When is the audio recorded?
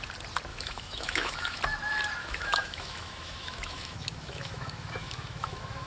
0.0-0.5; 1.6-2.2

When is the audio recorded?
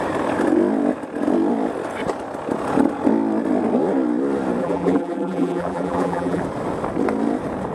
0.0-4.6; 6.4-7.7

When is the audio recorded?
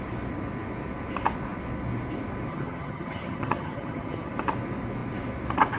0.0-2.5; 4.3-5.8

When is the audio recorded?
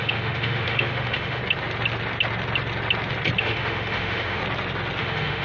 1.4-3.4; 4.4-5.0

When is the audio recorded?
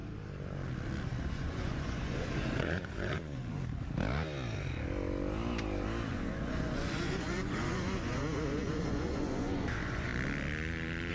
0.0-1.3; 3.4-6.1; 10.1-11.1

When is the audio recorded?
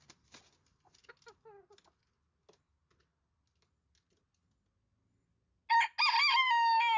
0.0-7.0